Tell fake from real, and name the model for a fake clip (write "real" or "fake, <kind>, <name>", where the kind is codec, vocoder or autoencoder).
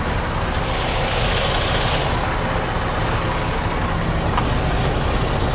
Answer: real